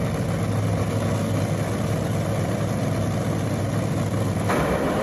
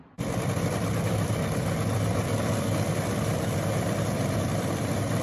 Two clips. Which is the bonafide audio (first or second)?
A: first